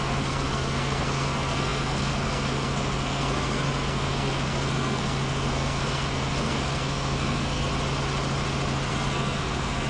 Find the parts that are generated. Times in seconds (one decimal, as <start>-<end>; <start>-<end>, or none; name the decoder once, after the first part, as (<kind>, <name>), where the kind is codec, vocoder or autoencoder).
0.0-7.7 (codec, SNAC); 8.9-9.9